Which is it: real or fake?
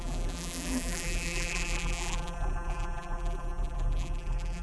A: fake